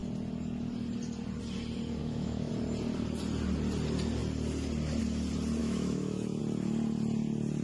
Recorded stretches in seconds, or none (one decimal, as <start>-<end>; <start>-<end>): 0.0-2.0; 2.5-5.6; 6.4-7.6